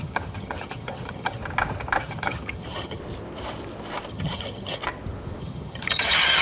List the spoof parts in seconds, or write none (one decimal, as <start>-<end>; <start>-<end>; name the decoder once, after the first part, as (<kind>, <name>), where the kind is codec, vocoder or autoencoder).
0.0-1.4 (vocoder, HiFi-GAN); 2.0-3.0; 4.1-4.8; 5.4-6.4